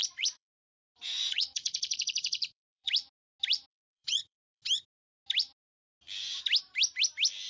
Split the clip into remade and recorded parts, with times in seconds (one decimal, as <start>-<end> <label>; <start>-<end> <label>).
0.0-2.9 remade; 2.9-3.7 recorded; 3.7-4.6 remade; 4.6-7.5 recorded